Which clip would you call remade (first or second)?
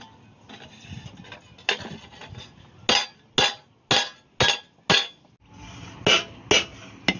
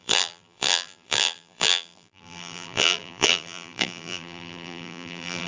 second